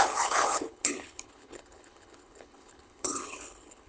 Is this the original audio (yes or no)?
no